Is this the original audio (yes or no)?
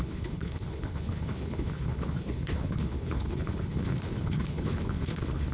no